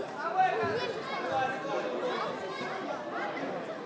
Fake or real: real